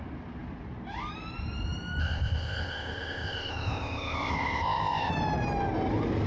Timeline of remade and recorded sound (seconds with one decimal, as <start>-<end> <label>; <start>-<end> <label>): 0.0-2.0 recorded; 2.0-5.1 remade; 5.1-6.3 recorded